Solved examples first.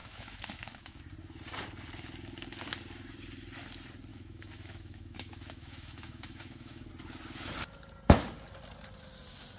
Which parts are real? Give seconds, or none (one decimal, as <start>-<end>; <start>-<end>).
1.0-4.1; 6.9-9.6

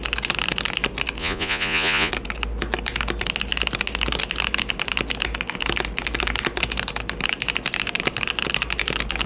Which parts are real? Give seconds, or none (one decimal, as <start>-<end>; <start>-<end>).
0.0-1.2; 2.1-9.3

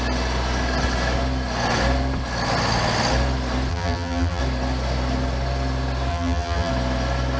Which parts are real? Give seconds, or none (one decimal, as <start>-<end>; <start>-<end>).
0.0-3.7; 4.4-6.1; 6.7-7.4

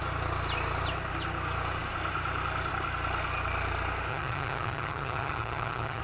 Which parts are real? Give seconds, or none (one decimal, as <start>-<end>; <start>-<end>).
0.0-4.1